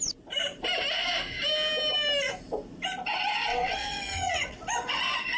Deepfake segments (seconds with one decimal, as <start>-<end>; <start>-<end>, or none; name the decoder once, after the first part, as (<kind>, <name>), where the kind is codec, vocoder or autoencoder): 3.5-5.0 (vocoder, WaveNeXt)